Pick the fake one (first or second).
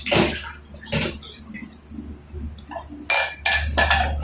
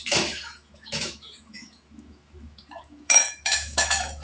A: second